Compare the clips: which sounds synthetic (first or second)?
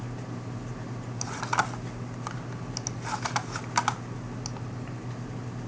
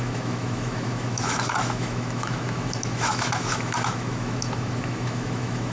second